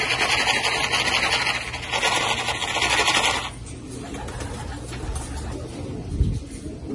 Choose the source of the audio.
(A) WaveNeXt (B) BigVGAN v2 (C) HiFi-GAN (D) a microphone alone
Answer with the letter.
D